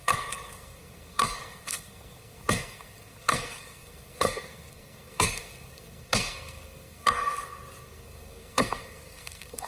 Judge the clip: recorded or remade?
remade